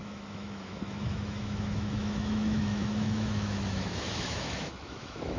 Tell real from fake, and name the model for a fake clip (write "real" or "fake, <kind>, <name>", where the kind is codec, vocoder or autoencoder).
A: fake, autoencoder, DAC-VAE